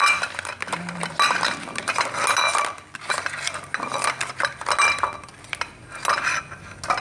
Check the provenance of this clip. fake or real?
real